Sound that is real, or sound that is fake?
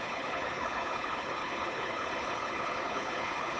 fake